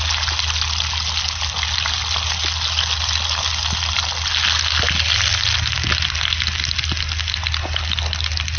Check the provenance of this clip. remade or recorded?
recorded